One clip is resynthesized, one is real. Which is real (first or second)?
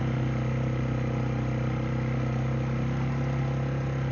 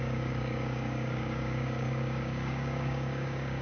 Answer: first